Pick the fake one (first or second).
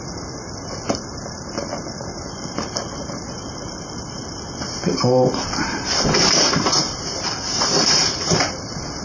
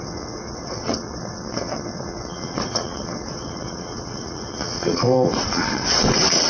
second